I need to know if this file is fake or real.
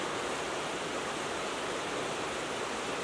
real